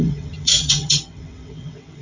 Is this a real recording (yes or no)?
no